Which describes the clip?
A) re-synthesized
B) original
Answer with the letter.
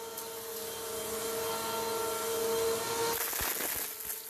B